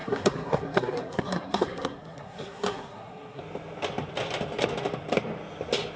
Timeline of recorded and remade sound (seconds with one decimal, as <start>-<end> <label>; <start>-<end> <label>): 0.0-3.4 remade; 3.4-6.0 recorded

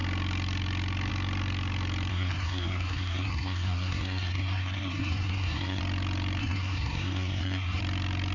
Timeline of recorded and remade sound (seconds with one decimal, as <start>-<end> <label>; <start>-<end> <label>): 0.0-2.1 recorded; 2.1-5.8 remade; 5.8-6.4 recorded; 6.4-7.8 remade; 7.8-8.3 recorded

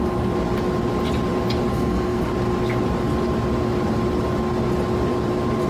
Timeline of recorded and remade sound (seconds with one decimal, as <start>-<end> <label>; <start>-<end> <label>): 0.0-1.7 recorded; 1.7-2.3 remade; 2.3-5.7 recorded